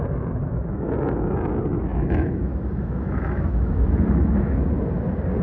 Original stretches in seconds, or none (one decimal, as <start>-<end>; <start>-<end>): 0.0-0.4; 0.9-1.9; 4.7-5.4